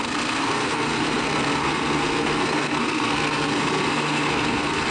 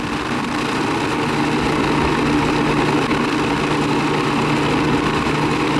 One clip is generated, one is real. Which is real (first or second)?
second